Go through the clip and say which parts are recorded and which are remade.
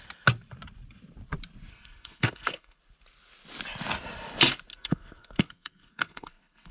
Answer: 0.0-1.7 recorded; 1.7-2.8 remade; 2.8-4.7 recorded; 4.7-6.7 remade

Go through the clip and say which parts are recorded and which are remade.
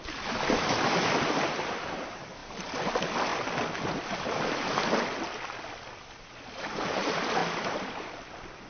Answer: 0.0-8.7 recorded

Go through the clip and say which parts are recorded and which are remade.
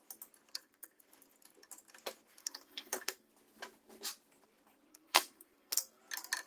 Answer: 0.0-0.5 recorded; 0.5-1.0 remade; 1.0-2.4 recorded; 2.4-3.3 remade; 3.3-4.9 recorded; 4.9-6.0 remade; 6.0-6.5 recorded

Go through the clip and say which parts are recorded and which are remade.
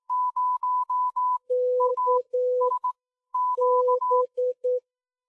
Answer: 0.0-5.3 remade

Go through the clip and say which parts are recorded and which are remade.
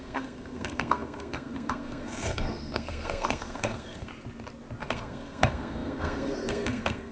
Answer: 0.0-4.1 remade; 4.1-4.8 recorded; 4.8-7.1 remade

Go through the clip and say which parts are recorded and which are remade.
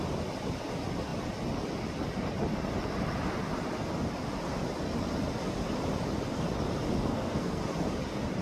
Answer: 0.0-7.1 recorded; 7.1-7.6 remade; 7.6-8.4 recorded